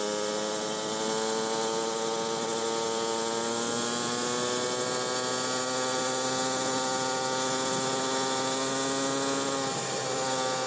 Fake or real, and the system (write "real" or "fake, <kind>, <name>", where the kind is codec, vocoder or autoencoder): real